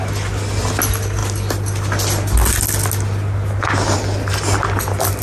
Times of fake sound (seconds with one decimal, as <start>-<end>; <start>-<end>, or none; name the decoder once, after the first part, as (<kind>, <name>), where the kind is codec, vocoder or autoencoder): none